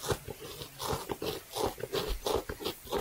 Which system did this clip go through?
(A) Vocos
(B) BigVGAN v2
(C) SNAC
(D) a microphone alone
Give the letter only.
D